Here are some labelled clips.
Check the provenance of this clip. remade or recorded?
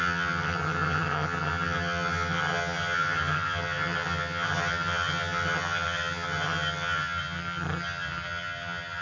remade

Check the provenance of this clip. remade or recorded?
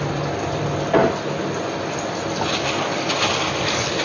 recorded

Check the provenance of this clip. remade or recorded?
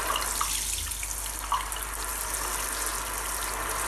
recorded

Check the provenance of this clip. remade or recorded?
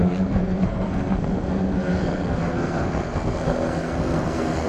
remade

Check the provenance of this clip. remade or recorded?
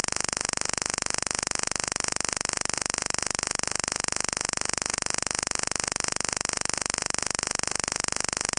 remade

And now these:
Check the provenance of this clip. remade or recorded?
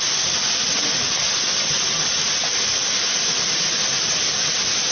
recorded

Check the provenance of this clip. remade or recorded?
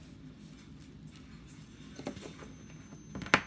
recorded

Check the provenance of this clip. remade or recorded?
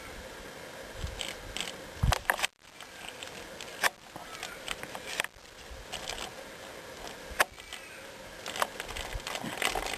recorded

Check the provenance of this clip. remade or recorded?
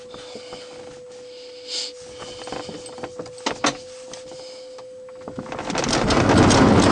recorded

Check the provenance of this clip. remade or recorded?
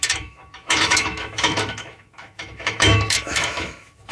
remade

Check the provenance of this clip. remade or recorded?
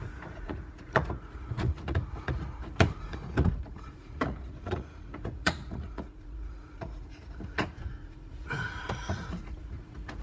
remade